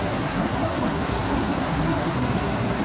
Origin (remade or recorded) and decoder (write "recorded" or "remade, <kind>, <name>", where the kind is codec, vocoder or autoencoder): remade, codec, SNAC